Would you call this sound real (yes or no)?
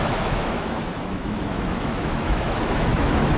no